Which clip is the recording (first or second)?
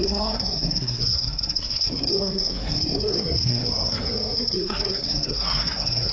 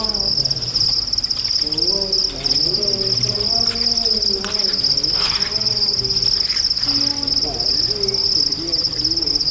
second